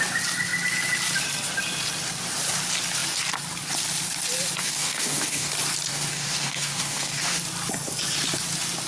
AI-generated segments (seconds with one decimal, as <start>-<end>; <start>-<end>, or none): 4.6-5.5; 5.9-7.4